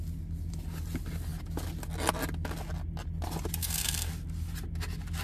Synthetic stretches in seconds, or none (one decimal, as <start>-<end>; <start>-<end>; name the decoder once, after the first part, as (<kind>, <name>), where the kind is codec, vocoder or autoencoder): 3.6-4.1 (codec, SNAC)